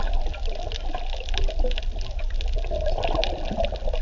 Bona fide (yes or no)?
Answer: yes